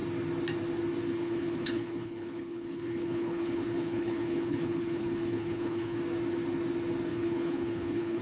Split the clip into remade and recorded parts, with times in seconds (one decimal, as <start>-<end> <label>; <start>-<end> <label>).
0.0-1.1 recorded; 1.1-6.0 remade; 6.0-7.1 recorded; 7.1-8.2 remade